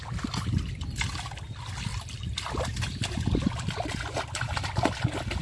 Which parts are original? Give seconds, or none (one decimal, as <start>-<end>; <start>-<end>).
0.0-5.4